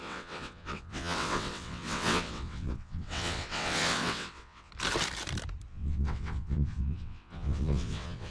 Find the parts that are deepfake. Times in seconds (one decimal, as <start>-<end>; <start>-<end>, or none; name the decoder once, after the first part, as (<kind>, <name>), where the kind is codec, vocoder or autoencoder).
0.0-4.7 (vocoder, WaveNeXt); 5.7-8.3